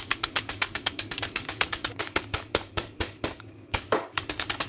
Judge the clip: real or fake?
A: fake